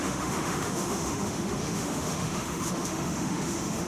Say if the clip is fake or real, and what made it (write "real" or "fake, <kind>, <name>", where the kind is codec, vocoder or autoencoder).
fake, autoencoder, DAC-VAE